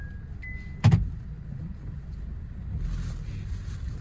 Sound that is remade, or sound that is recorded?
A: recorded